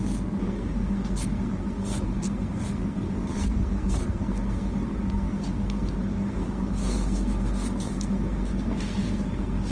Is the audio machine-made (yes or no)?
yes